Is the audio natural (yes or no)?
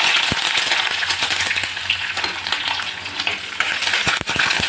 no